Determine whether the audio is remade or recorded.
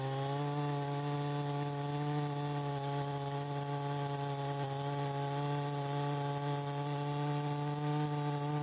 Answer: recorded